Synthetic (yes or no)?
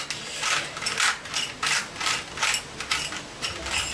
no